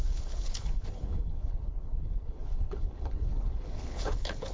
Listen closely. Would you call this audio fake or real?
fake